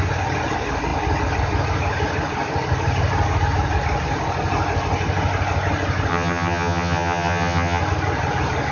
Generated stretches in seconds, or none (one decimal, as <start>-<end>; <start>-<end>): 6.1-7.8